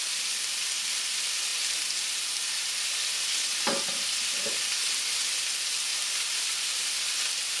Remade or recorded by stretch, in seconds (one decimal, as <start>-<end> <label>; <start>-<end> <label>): 0.0-5.9 recorded; 5.9-6.9 remade; 6.9-7.6 recorded